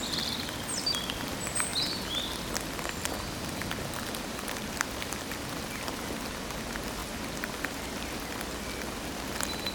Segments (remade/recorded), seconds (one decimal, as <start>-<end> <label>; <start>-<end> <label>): 0.0-1.7 recorded; 1.7-5.1 remade; 5.1-9.7 recorded